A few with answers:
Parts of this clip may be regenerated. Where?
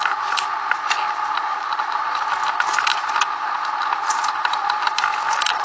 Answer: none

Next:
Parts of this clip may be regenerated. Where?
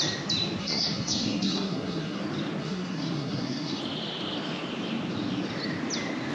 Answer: 0.6-2.2; 2.6-3.8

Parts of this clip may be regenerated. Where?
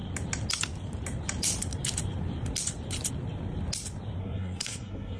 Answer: 4.2-5.2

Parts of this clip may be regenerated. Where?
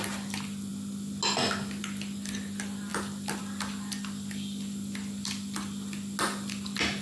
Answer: none